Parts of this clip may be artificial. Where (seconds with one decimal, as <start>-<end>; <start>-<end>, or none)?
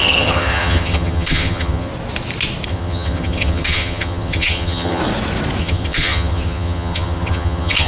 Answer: 0.0-1.9; 2.7-5.0; 5.6-7.9